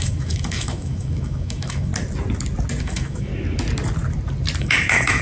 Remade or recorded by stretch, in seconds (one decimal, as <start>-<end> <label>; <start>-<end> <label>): 0.0-1.9 remade; 1.9-2.8 recorded; 2.8-3.3 remade; 3.3-4.6 recorded; 4.6-5.2 remade